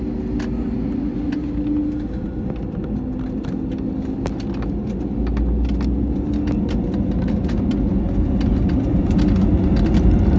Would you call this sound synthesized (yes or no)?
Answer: no